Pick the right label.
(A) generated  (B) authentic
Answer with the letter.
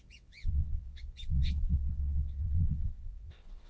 A